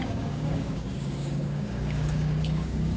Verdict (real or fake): fake